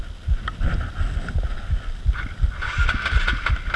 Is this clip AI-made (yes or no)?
no